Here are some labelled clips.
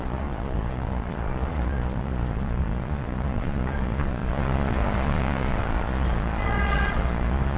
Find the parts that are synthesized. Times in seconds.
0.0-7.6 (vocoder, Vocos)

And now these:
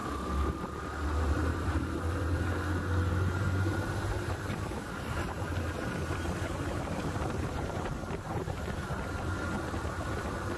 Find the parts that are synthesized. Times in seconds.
1.2-10.6 (vocoder, BigVGAN v2)

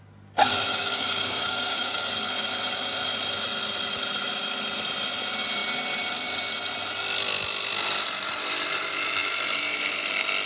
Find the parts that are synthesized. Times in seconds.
0.7-2.1 (codec, DAC)

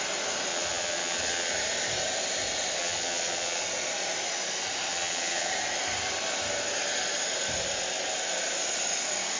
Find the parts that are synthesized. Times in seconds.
0.5-1.5 (vocoder, WaveNeXt); 2.8-3.6; 4.9-5.5

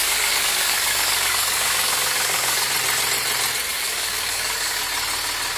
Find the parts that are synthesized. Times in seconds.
0.0-2.7 (codec, DAC); 3.7-4.8